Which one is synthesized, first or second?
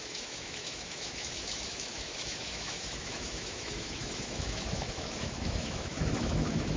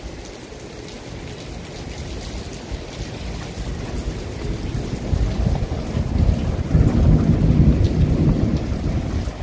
first